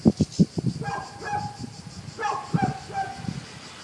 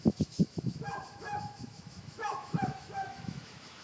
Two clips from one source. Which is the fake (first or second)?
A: second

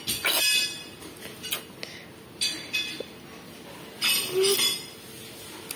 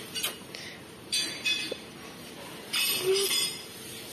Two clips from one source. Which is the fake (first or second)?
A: second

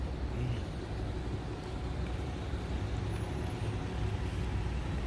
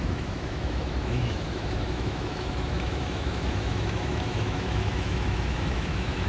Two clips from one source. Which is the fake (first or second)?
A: second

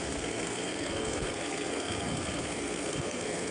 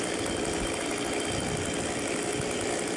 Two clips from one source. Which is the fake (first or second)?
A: first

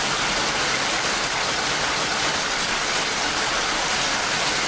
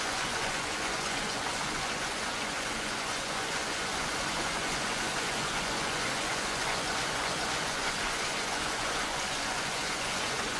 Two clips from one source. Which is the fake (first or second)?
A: second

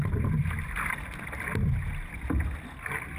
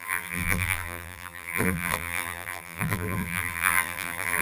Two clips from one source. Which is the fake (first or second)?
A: second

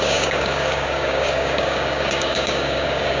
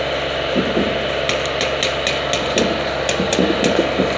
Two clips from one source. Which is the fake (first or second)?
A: first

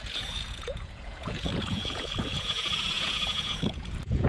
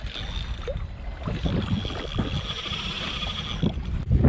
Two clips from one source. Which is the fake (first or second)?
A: first